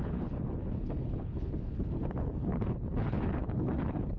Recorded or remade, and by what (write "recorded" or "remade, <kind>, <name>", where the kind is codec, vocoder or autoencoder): remade, codec, HILCodec